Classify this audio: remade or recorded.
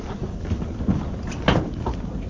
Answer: recorded